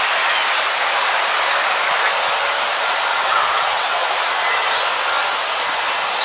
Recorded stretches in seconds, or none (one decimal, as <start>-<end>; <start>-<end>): 0.0-3.1; 4.1-6.2